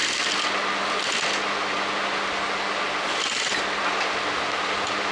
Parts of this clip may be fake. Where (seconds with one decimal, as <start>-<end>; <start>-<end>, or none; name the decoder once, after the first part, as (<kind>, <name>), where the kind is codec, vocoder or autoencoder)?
none